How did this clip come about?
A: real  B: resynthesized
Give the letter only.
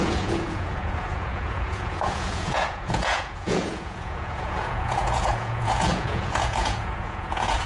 B